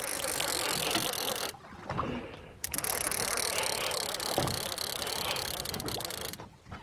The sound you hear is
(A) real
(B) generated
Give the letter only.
A